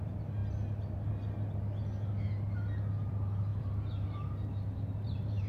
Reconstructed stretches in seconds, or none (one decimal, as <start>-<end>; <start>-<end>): 0.0-0.4; 3.1-5.5